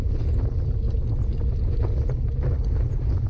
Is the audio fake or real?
real